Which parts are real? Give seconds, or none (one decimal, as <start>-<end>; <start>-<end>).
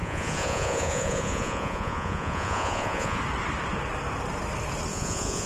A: 3.2-4.9